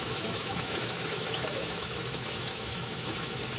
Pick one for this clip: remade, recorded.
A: remade